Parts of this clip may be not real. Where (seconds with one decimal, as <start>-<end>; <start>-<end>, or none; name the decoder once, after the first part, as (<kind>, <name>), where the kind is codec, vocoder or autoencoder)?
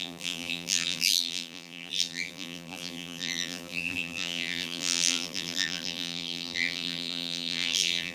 0.0-8.1 (vocoder, BigVGAN v2)